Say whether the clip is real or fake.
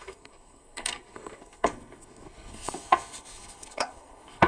fake